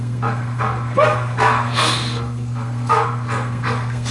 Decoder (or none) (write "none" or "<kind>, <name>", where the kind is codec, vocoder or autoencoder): codec, SNAC